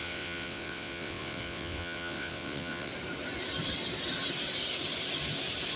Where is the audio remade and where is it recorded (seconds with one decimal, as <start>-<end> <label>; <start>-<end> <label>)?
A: 0.0-2.9 remade; 2.9-5.8 recorded

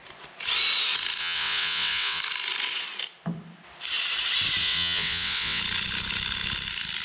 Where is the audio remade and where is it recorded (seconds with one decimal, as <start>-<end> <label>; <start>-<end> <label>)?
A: 0.0-1.2 recorded; 1.2-2.2 remade; 2.2-4.6 recorded; 4.6-5.6 remade; 5.6-7.0 recorded